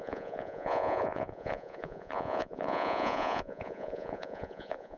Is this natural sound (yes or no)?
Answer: no